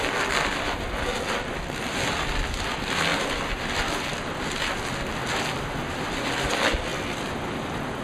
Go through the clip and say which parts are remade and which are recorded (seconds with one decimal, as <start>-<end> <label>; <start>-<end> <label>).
0.0-8.0 recorded